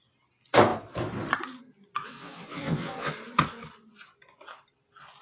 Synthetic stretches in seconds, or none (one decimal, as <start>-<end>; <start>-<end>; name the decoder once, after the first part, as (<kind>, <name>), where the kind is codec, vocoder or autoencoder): 2.0-3.1 (vocoder, WaveNeXt)